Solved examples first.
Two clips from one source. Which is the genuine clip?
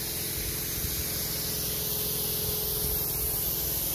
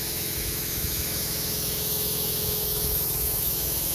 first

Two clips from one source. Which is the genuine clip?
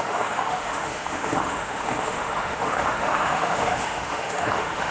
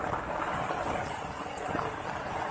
second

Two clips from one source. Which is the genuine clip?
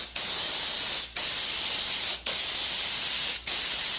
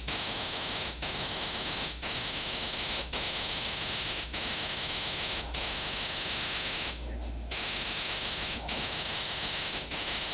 first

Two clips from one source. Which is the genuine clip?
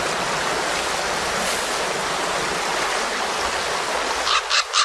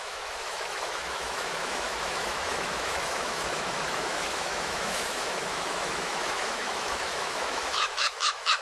first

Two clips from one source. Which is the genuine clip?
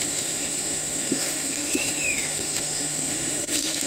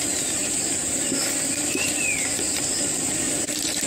second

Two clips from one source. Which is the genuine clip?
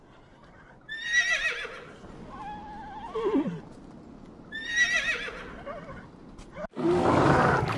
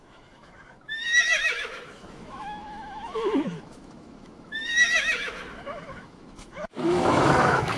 first